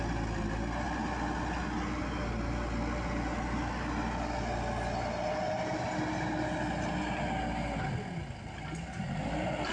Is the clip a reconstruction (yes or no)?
no